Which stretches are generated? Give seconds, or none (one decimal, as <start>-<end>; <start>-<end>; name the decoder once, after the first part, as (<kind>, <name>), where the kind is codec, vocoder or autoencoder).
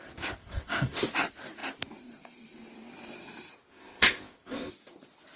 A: 0.4-1.0 (codec, ZipCodec); 3.7-4.7